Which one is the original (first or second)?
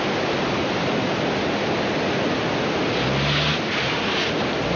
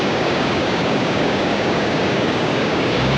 first